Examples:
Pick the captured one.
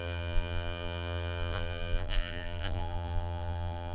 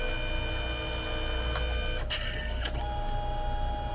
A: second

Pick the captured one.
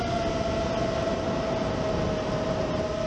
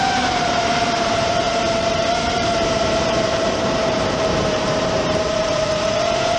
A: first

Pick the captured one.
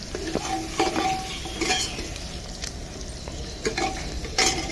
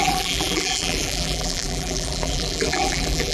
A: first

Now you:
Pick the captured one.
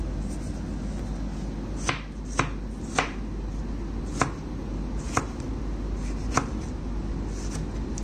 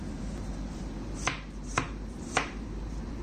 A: first